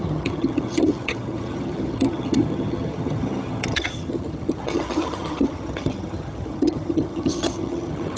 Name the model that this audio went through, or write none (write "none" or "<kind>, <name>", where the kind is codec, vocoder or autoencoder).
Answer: vocoder, HiFi-GAN